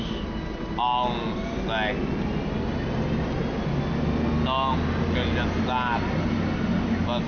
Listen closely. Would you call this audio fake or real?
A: real